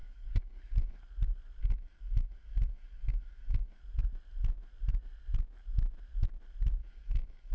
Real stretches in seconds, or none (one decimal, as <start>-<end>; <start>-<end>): 1.0-1.6; 3.8-6.8